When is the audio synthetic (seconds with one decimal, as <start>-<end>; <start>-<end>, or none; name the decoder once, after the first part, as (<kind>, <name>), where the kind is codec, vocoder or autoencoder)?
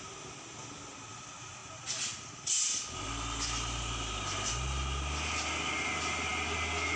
1.6-2.3 (vocoder, BigVGAN v2)